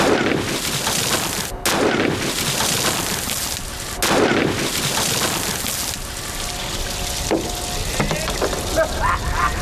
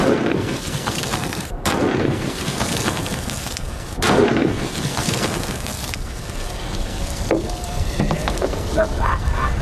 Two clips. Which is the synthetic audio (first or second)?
second